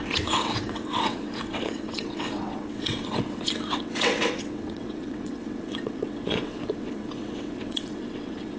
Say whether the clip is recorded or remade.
remade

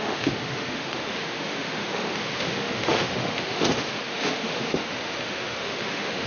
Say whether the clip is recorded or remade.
remade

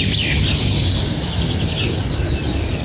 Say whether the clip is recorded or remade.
recorded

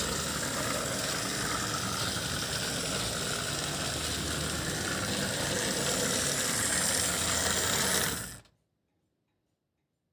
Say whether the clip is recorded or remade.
recorded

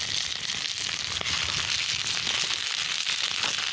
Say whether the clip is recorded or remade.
recorded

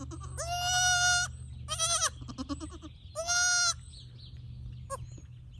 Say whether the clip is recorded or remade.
recorded